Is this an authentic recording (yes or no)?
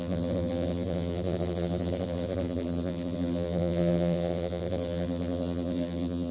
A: no